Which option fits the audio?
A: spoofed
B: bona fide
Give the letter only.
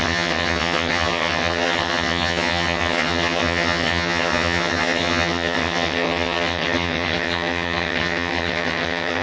A